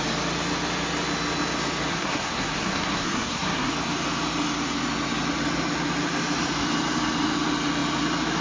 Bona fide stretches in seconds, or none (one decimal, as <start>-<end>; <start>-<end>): 0.0-1.9; 3.7-8.4